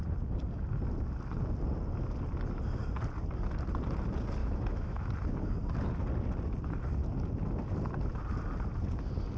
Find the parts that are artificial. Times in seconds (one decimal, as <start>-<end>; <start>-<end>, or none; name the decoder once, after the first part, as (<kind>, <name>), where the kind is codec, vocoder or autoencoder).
4.4-5.1 (autoencoder, DAC-VAE)